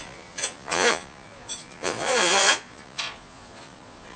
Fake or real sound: fake